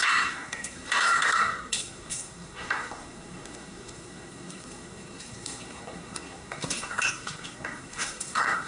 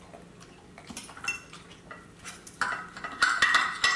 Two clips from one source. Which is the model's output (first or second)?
first